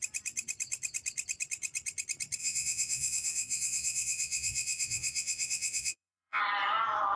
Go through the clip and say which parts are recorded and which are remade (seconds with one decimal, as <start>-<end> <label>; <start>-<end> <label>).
0.0-2.4 recorded; 2.4-6.4 remade; 6.4-7.2 recorded